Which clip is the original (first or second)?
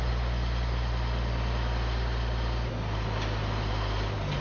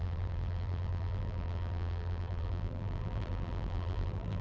first